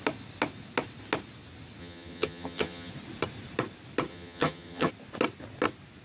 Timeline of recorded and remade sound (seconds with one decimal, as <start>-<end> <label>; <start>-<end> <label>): 0.0-1.8 recorded; 1.8-2.9 remade; 2.9-4.1 recorded; 4.1-4.9 remade; 4.9-6.0 recorded